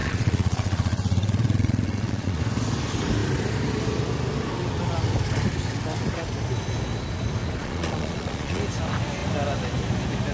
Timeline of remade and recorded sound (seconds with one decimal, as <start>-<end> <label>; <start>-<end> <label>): 0.0-2.4 remade; 2.4-7.6 recorded; 7.6-8.6 remade; 8.6-10.3 recorded